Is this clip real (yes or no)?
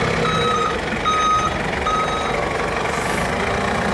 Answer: yes